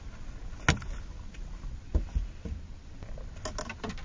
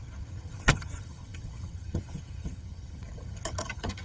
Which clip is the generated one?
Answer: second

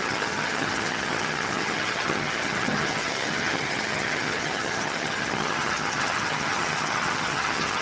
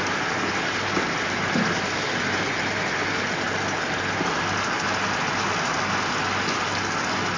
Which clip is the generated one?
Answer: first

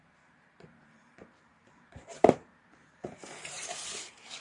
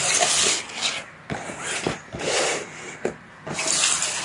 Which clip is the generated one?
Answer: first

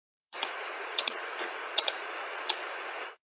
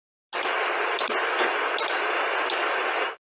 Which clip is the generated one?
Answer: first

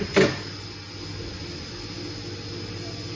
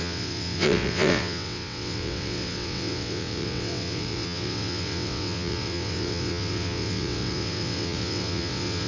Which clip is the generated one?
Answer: second